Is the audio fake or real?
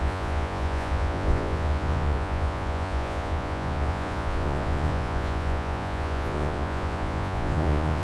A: fake